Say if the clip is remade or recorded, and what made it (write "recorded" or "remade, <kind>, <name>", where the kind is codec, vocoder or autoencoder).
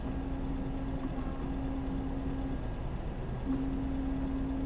recorded